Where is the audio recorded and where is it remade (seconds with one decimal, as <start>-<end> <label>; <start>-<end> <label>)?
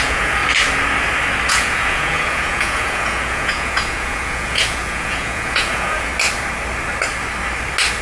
0.0-0.4 remade; 0.4-1.5 recorded; 1.5-6.1 remade; 6.1-8.0 recorded